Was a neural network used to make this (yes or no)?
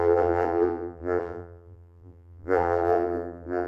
yes